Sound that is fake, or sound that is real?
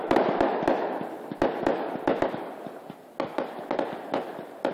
real